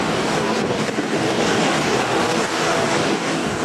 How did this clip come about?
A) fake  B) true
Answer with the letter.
A